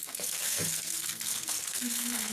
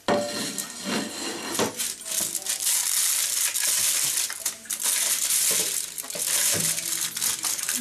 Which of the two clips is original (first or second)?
second